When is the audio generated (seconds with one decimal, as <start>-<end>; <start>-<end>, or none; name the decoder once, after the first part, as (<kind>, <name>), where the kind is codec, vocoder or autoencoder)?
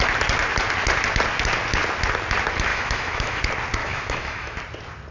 2.7-3.4 (autoencoder, DAC-VAE); 3.8-4.6